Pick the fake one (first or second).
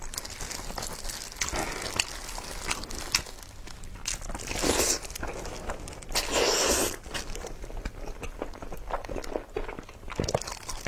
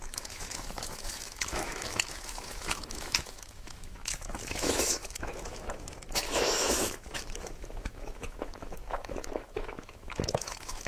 second